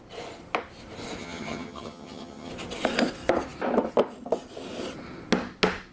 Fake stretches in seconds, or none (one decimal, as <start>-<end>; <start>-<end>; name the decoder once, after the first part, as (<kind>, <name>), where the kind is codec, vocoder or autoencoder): 1.2-2.5 (vocoder, HiFi-GAN)